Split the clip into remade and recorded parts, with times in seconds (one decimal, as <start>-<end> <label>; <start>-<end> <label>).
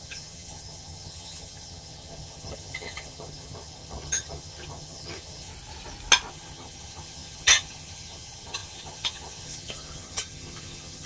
0.0-5.5 remade; 5.5-6.3 recorded; 6.3-11.1 remade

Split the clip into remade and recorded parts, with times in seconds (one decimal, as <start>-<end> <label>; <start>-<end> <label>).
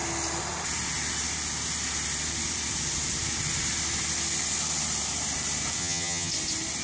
0.0-5.8 recorded; 5.8-6.3 remade; 6.3-6.8 recorded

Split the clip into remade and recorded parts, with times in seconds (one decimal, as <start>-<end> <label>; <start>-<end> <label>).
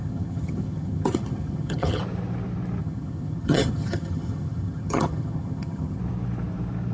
0.0-2.0 remade; 2.0-2.8 recorded; 2.8-6.0 remade; 6.0-6.9 recorded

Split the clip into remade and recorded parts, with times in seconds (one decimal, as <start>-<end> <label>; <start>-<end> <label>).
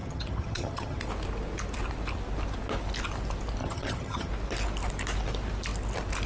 0.0-1.0 remade; 1.0-3.6 recorded; 3.6-4.3 remade; 4.3-6.3 recorded